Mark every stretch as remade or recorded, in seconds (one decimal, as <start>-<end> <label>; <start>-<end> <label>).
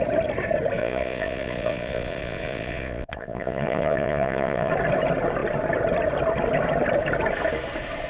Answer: 0.0-0.8 recorded; 0.8-4.7 remade; 4.7-8.1 recorded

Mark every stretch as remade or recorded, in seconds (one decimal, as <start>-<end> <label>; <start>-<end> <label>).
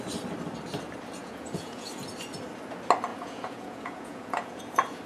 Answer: 0.0-1.2 recorded; 1.2-1.9 remade; 1.9-3.1 recorded; 3.1-4.6 remade; 4.6-5.1 recorded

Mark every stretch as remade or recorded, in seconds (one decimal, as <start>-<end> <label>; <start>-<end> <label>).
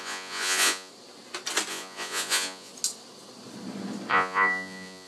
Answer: 0.0-0.9 remade; 0.9-1.7 recorded; 1.7-2.7 remade; 2.7-4.1 recorded; 4.1-5.1 remade